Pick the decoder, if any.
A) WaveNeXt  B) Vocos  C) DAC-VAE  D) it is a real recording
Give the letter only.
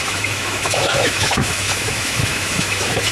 C